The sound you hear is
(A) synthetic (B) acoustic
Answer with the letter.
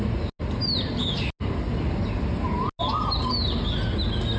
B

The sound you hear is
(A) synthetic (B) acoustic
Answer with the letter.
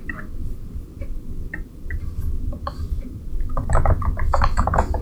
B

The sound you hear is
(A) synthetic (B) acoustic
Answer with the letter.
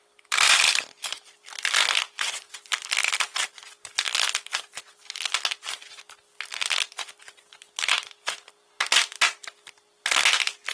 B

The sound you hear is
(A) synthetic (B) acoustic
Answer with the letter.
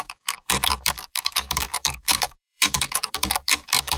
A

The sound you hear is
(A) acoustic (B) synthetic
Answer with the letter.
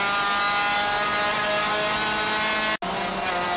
A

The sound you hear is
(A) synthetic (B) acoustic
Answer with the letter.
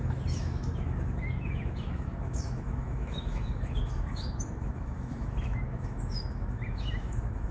A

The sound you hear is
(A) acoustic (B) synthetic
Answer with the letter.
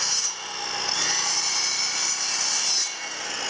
A